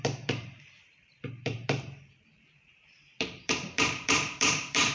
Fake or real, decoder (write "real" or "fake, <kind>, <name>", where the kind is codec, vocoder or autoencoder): fake, vocoder, BigVGAN v2